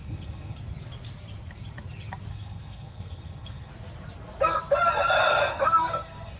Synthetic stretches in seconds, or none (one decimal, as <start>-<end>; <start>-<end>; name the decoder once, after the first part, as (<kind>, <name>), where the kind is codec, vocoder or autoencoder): 0.0-0.6 (codec, SNAC); 2.3-3.7; 5.3-6.4